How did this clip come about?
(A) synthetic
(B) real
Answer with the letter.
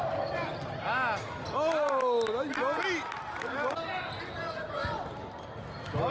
B